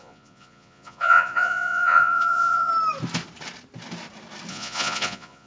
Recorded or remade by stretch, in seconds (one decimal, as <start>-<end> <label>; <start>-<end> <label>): 0.0-2.7 remade; 2.7-4.5 recorded; 4.5-5.5 remade